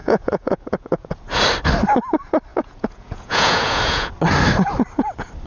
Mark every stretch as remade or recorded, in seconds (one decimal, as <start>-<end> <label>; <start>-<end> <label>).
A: 0.0-1.1 remade; 1.1-2.5 recorded; 2.5-4.1 remade; 4.1-5.5 recorded